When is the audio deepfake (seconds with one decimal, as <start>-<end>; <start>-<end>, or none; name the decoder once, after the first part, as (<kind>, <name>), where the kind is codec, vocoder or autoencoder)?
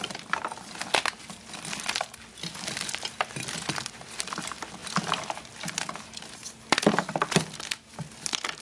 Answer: none